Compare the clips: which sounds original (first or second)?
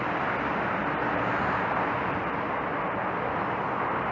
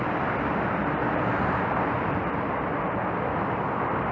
first